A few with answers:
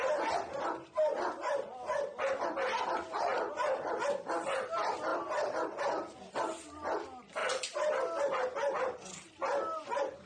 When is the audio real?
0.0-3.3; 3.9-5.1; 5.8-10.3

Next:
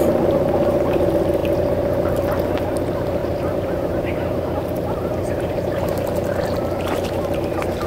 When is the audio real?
0.0-3.2

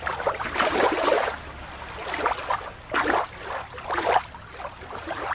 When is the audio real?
1.5-4.7

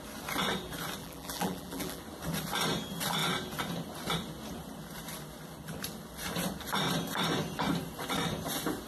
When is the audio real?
0.0-1.0; 2.0-8.9

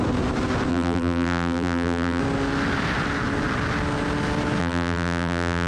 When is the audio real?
0.0-0.7; 2.2-4.6

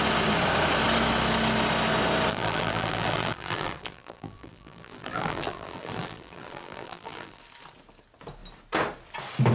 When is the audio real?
0.0-2.3; 7.4-9.5

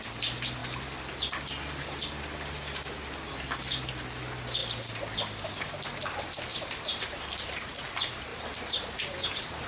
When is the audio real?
0.0-6.5; 7.2-8.3

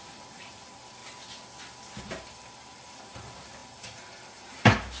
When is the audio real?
1.0-2.0